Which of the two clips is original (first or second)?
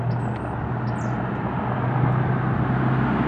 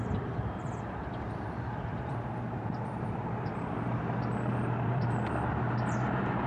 first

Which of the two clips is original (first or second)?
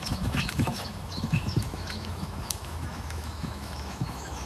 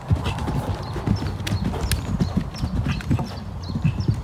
second